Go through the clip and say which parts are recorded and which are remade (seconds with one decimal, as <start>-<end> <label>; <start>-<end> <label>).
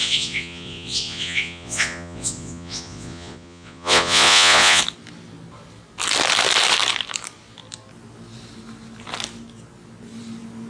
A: 0.0-4.8 remade; 4.8-10.7 recorded